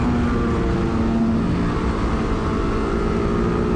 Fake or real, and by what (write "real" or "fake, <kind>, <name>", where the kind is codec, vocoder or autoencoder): real